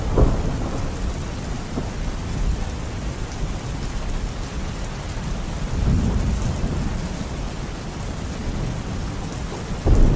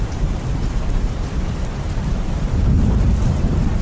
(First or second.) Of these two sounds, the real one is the first